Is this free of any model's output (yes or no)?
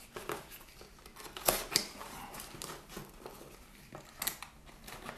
yes